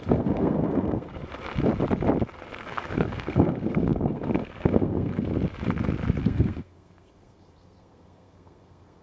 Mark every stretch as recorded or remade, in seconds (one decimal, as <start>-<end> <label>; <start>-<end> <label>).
0.0-1.2 remade; 1.2-2.7 recorded; 2.7-5.3 remade; 5.3-6.2 recorded; 6.2-9.0 remade